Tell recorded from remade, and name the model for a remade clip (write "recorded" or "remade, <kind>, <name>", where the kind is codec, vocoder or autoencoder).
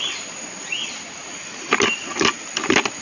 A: recorded